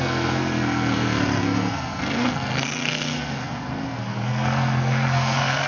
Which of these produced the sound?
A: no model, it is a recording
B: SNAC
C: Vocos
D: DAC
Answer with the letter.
B